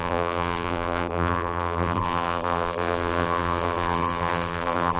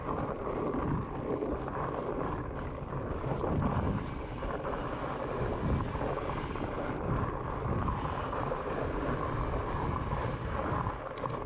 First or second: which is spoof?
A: first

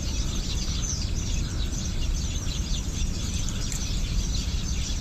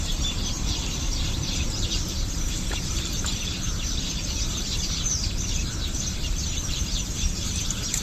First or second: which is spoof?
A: second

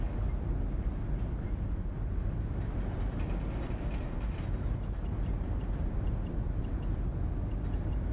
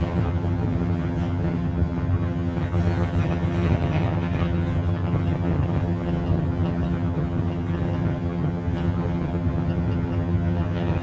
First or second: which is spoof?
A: second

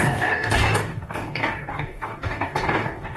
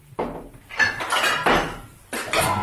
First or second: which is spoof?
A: first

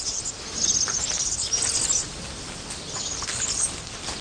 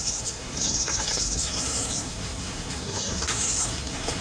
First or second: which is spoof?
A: second